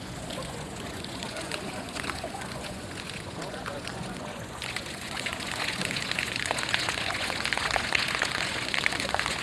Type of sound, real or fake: fake